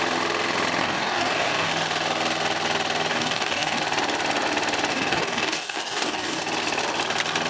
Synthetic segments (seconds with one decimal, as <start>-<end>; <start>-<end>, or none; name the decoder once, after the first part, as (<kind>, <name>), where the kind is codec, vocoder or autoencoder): 0.8-1.7 (codec, DAC); 3.1-3.8; 4.9-6.4